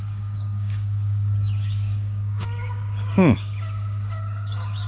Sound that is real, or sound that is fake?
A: fake